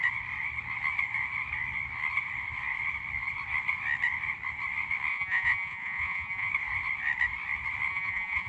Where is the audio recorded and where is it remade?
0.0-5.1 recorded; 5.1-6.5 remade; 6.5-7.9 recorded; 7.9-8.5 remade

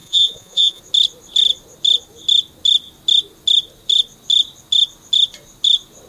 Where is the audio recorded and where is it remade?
0.0-0.8 remade; 0.8-6.1 recorded

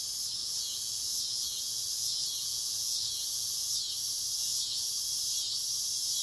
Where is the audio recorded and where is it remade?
0.0-0.4 recorded; 0.4-3.7 remade; 3.7-4.4 recorded; 4.4-4.9 remade; 4.9-6.2 recorded

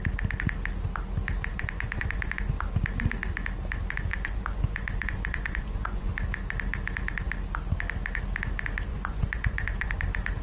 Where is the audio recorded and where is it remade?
0.0-1.5 recorded; 1.5-2.5 remade; 2.5-4.1 recorded; 4.1-6.1 remade; 6.1-8.9 recorded; 8.9-9.9 remade; 9.9-10.4 recorded

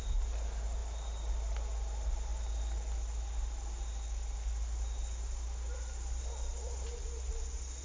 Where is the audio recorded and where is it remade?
0.0-7.8 recorded